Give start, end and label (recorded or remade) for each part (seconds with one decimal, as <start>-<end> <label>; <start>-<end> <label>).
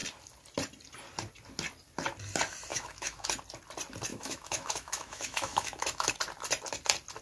0.0-2.7 recorded; 2.7-3.3 remade; 3.3-4.1 recorded; 4.1-6.1 remade; 6.1-7.2 recorded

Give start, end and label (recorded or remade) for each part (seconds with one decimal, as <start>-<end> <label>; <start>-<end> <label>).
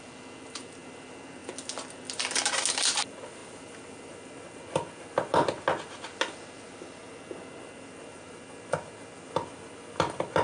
0.0-10.4 recorded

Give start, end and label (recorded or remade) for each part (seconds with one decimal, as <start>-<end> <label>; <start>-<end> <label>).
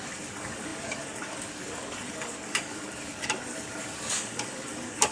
0.0-5.1 remade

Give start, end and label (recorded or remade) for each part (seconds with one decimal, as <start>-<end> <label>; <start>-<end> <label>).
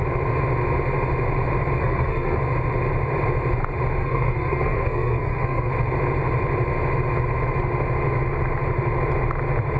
0.0-1.8 recorded; 1.8-2.4 remade; 2.4-4.0 recorded; 4.0-5.7 remade; 5.7-9.8 recorded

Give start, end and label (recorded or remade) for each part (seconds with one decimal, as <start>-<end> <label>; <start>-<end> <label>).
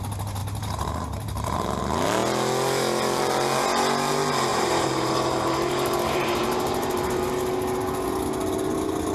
0.0-0.4 recorded; 0.4-1.8 remade; 1.8-4.5 recorded; 4.5-7.3 remade; 7.3-9.1 recorded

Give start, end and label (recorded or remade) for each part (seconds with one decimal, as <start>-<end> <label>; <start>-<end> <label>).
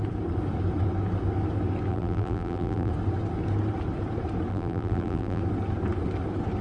0.0-1.9 recorded; 1.9-2.9 remade; 2.9-4.5 recorded; 4.5-5.4 remade; 5.4-6.6 recorded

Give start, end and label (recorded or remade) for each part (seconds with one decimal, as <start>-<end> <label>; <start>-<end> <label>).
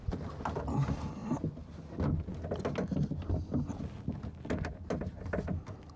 0.0-6.0 recorded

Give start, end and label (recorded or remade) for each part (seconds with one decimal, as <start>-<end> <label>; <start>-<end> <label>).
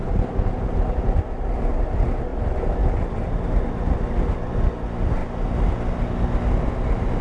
0.0-7.2 recorded